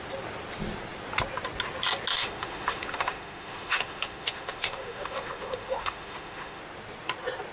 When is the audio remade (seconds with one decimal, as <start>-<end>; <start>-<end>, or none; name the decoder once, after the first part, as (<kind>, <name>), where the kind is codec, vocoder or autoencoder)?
2.1-6.6 (autoencoder, DAC-VAE)